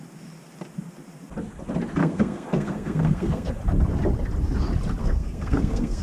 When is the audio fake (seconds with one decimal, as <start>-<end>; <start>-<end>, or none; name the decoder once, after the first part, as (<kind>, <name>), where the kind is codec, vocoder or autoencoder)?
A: 2.0-3.5 (codec, SNAC); 5.0-6.0